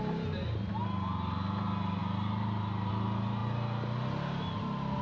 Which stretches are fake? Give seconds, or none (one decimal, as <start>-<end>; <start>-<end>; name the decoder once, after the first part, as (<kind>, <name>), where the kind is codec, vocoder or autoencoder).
none